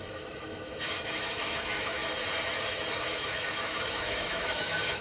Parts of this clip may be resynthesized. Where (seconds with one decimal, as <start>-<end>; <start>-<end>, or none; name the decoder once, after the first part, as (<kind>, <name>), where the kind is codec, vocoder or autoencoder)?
0.0-2.0 (autoencoder, DAC-VAE); 3.0-5.0